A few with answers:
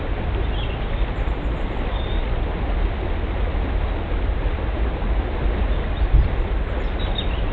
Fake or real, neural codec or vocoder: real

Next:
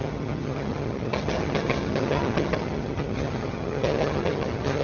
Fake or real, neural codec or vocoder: fake, vocoder, HiFi-GAN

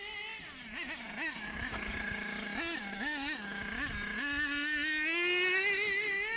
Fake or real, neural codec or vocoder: real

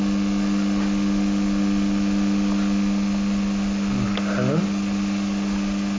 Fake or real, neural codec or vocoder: real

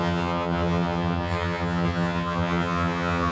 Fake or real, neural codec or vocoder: fake, vocoder, HiFi-GAN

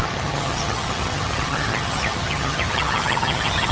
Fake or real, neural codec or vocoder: fake, vocoder, HiFi-GAN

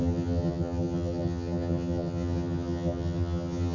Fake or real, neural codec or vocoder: fake, vocoder, HiFi-GAN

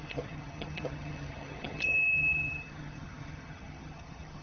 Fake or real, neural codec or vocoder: fake, vocoder, HiFi-GAN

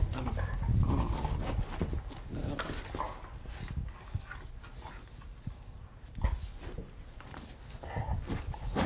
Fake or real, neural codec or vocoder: real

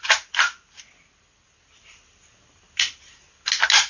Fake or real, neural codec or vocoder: real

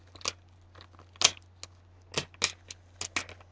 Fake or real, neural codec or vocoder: real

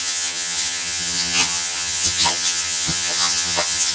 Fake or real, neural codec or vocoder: fake, vocoder, HiFi-GAN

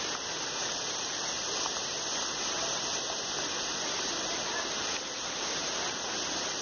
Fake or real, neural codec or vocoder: real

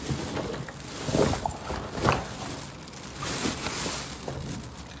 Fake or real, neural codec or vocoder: real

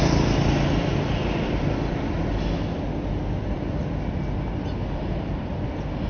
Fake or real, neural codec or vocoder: real